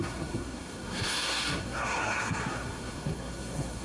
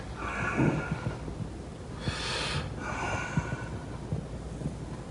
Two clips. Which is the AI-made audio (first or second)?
first